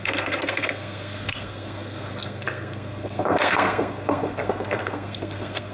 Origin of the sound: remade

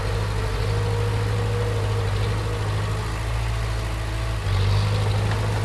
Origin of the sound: recorded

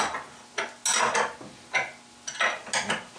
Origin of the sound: recorded